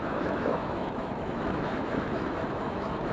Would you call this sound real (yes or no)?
no